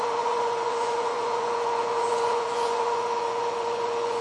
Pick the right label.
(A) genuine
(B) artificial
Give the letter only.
B